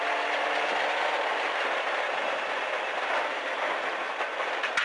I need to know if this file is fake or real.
real